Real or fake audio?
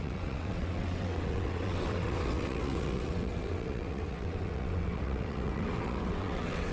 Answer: fake